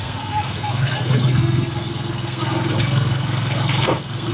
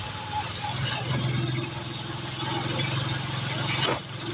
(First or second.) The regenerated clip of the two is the first